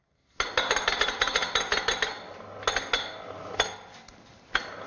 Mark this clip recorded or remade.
recorded